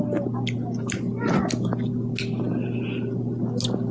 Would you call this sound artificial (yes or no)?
no